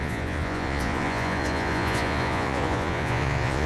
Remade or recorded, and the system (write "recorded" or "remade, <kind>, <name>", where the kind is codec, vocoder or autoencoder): remade, vocoder, Vocos